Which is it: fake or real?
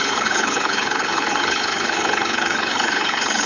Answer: fake